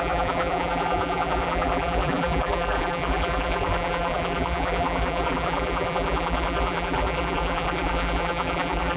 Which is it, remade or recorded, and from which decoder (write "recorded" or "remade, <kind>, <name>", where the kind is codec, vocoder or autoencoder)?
remade, vocoder, BigVGAN v2